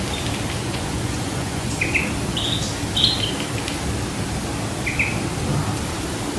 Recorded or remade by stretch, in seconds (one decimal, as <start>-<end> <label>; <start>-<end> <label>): 0.0-0.6 recorded; 0.6-1.7 remade; 1.7-6.4 recorded